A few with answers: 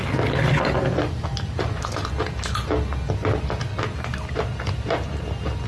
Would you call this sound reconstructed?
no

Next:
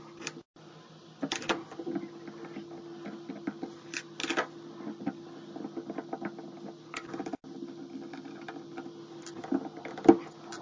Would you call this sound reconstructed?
no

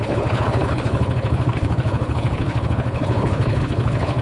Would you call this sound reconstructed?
yes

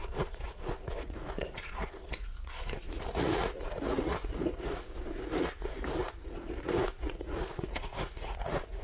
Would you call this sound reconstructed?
yes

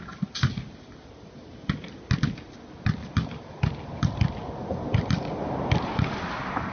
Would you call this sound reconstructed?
no